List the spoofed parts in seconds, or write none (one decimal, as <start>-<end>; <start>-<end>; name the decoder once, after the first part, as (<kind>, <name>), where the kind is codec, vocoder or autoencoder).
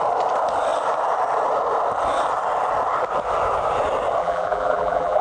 4.2-5.2 (vocoder, BigVGAN v2)